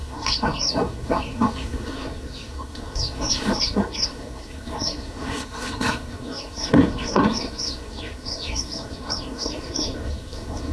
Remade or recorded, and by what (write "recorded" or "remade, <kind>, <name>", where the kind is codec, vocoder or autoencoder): remade, codec, SNAC